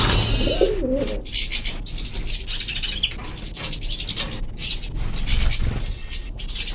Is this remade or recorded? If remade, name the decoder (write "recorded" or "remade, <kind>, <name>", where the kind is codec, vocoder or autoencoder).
recorded